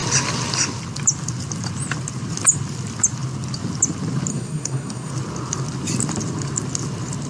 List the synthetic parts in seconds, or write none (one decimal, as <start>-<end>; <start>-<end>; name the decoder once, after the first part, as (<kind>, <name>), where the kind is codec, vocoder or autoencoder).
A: 4.3-5.1 (codec, SNAC)